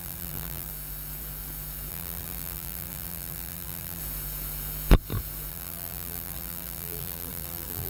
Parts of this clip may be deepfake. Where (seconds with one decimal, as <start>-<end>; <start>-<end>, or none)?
0.0-0.7; 1.9-4.0; 5.5-7.9